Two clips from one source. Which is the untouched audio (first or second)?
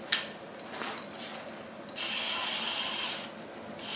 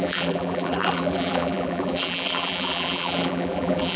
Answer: first